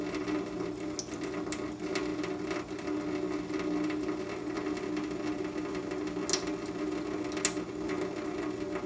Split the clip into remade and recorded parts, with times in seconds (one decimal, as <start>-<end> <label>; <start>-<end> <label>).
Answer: 0.0-8.9 recorded